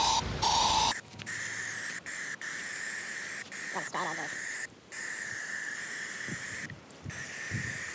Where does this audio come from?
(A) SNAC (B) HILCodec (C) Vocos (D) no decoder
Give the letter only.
D